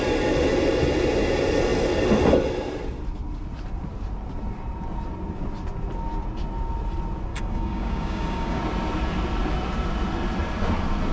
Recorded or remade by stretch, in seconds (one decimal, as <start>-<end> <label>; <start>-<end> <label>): 0.0-7.3 recorded; 7.3-8.6 remade; 8.6-11.1 recorded